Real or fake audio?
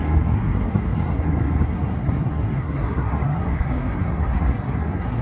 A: fake